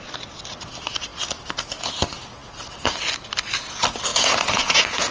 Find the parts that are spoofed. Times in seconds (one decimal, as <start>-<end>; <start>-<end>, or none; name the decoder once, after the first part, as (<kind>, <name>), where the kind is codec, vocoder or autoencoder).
4.1-5.1 (vocoder, Vocos)